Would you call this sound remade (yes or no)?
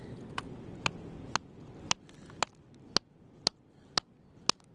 no